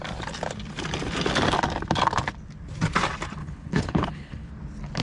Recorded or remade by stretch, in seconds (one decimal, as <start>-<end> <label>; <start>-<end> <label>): 0.0-3.4 recorded; 3.4-4.5 remade; 4.5-5.0 recorded